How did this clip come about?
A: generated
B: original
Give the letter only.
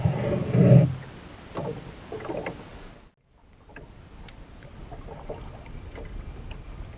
B